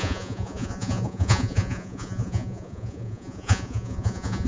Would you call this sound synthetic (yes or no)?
yes